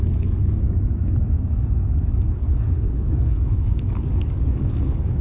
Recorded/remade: remade